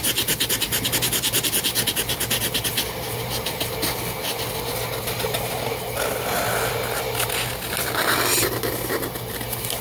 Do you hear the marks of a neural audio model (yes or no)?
no